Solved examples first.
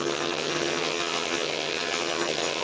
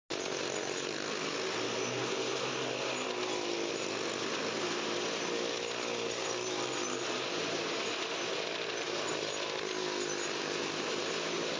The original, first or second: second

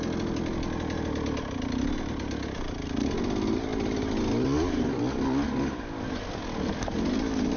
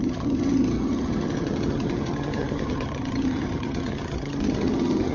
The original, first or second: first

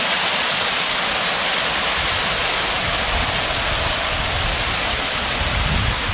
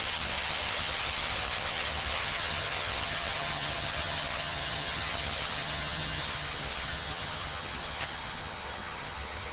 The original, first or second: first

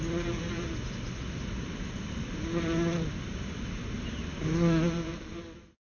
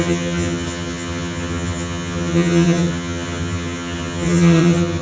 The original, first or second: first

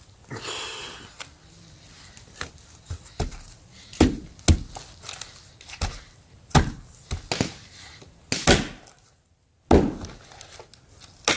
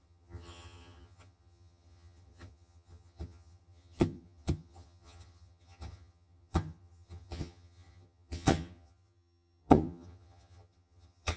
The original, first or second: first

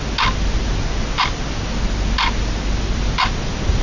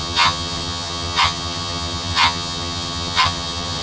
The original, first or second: first